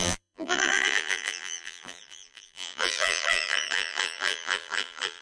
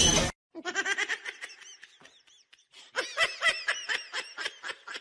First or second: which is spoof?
first